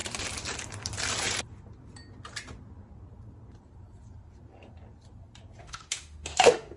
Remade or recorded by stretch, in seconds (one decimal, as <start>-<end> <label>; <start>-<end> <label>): 0.0-5.6 recorded; 5.6-6.8 remade